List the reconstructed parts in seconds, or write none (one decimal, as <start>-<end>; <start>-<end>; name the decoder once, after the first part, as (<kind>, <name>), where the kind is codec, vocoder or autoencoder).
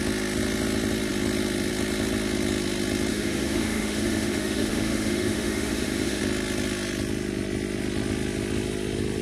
3.1-6.2 (autoencoder, DAC-VAE)